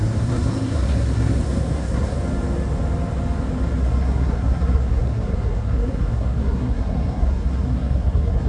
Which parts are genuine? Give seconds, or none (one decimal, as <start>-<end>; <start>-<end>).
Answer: 2.2-3.8